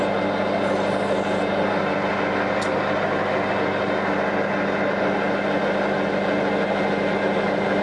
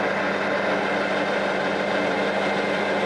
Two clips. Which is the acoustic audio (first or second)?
first